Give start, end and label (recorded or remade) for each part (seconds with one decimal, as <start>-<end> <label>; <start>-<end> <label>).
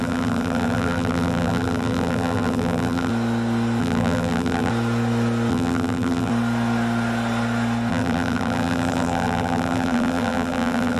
0.0-3.1 remade; 3.1-3.8 recorded; 3.8-4.7 remade; 4.7-5.5 recorded; 5.5-6.3 remade; 6.3-7.9 recorded; 7.9-11.0 remade